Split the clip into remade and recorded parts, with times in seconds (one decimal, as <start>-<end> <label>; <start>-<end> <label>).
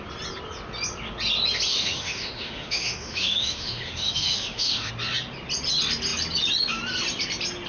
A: 0.0-1.7 recorded; 1.7-4.9 remade; 4.9-7.7 recorded